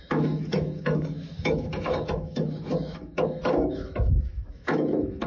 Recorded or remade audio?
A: remade